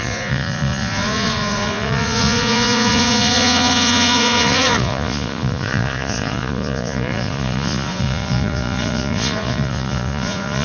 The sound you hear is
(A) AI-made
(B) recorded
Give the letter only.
A